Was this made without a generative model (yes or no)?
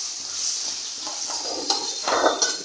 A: yes